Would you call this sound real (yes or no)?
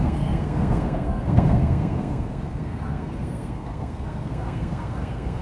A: no